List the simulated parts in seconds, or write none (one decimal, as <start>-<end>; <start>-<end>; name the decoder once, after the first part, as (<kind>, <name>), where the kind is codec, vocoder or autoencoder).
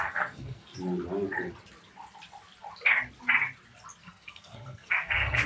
0.0-0.7 (codec, SNAC); 4.0-5.5